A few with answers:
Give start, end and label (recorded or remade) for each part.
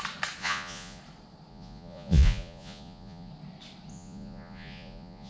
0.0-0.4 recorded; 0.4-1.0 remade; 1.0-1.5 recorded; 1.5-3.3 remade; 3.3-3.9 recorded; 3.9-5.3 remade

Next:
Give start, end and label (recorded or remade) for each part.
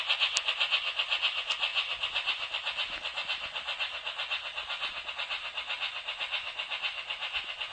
0.0-7.7 recorded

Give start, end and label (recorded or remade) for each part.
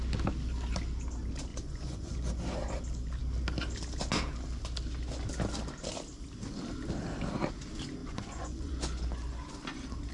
0.0-1.5 recorded; 1.5-2.3 remade; 2.3-8.0 recorded; 8.0-9.5 remade; 9.5-10.1 recorded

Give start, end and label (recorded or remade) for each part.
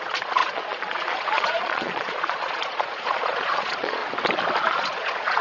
0.0-4.0 remade; 4.0-4.7 recorded; 4.7-5.4 remade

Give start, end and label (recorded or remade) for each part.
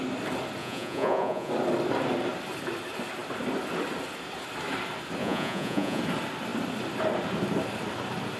0.0-0.6 recorded; 0.6-1.5 remade; 1.5-5.2 recorded; 5.2-6.0 remade; 6.0-8.4 recorded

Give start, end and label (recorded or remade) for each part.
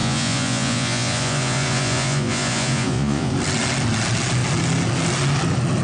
0.0-3.3 remade; 3.3-5.8 recorded